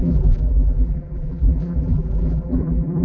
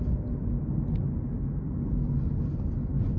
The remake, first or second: first